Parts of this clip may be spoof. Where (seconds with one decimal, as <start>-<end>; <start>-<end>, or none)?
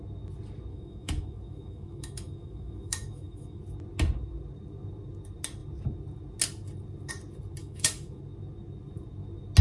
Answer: 0.7-3.6; 7.6-8.2